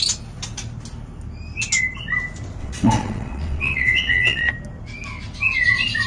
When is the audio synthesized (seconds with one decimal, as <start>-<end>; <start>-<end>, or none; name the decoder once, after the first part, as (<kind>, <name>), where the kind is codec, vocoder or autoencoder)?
2.6-4.5 (vocoder, WaveNeXt)